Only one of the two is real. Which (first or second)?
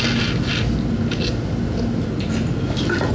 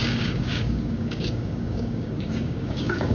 first